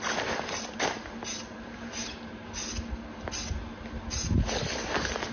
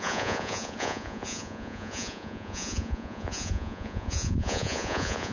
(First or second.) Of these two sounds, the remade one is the second